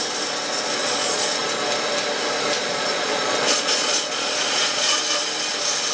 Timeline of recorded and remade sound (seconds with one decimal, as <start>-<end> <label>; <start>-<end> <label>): 0.0-0.8 recorded; 0.8-1.4 remade; 1.4-2.6 recorded; 2.6-5.0 remade; 5.0-5.9 recorded